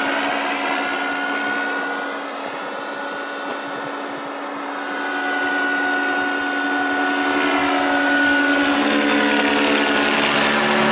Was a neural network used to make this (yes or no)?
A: no